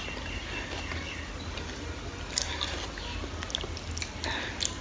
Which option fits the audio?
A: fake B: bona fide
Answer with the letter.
B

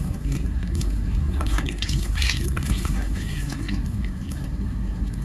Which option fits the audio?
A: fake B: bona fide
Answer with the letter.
A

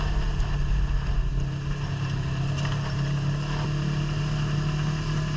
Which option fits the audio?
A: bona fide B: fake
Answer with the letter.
A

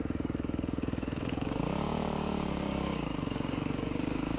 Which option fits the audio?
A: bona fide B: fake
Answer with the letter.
B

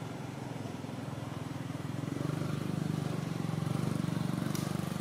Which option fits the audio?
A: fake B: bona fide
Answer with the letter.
A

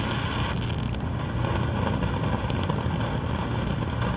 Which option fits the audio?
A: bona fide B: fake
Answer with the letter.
A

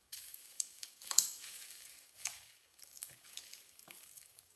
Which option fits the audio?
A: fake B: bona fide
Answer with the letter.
A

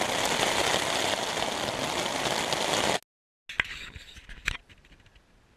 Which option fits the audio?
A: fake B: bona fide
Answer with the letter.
B